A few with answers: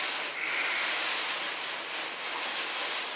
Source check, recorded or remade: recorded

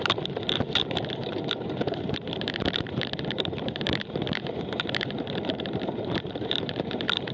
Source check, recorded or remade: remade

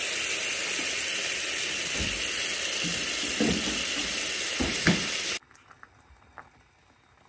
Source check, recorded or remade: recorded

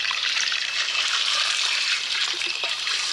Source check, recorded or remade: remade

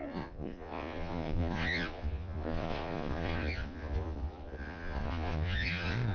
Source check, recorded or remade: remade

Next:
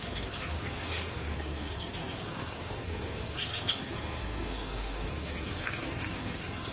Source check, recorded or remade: remade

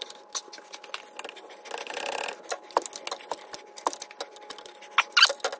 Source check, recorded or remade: recorded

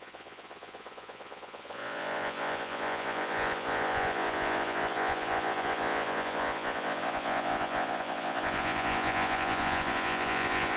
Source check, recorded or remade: remade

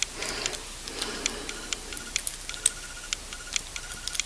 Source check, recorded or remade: recorded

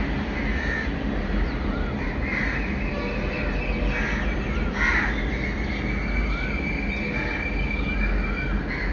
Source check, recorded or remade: recorded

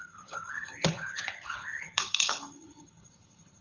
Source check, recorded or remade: remade